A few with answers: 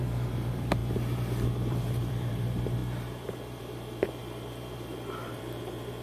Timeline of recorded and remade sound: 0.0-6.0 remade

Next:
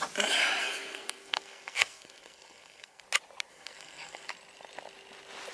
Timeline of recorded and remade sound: 0.0-0.6 recorded; 0.6-3.0 remade; 3.0-3.5 recorded; 3.5-4.3 remade; 4.3-5.5 recorded